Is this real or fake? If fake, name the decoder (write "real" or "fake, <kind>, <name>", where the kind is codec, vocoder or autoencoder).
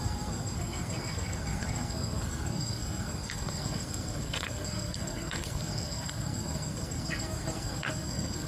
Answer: fake, codec, SNAC